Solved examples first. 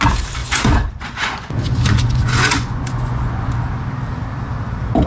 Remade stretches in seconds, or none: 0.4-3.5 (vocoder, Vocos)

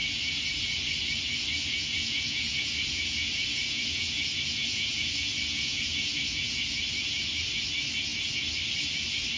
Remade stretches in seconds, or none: 0.0-0.9 (vocoder, Vocos); 1.7-6.8

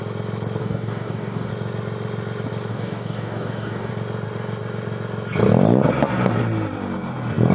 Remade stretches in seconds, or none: 0.6-1.5 (codec, DAC); 2.7-3.9

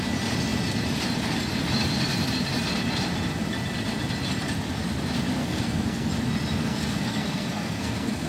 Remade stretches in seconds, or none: 5.4-6.1 (codec, SNAC); 6.6-8.3

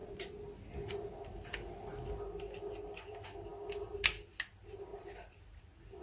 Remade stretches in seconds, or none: none